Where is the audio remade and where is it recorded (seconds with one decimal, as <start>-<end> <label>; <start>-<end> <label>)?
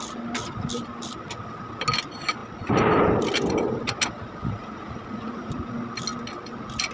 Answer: 0.0-4.4 recorded; 4.4-5.5 remade; 5.5-6.9 recorded